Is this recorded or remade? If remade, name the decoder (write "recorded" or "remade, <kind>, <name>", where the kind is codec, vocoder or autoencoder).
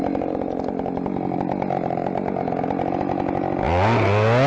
recorded